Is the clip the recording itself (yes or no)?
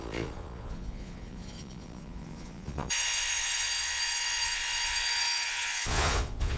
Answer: no